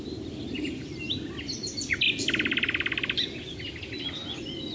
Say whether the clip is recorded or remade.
recorded